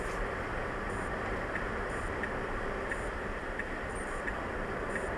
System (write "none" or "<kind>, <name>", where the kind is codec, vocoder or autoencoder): vocoder, BigVGAN v2